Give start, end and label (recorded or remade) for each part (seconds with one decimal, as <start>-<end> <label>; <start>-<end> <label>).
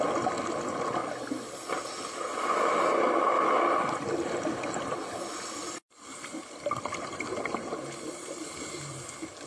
0.0-9.5 recorded